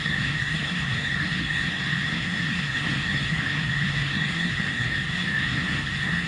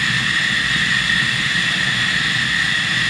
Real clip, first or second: second